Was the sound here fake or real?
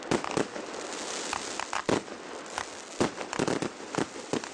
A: real